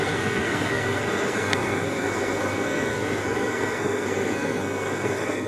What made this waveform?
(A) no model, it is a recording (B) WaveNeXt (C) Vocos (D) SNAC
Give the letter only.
D